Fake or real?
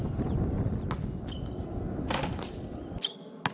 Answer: real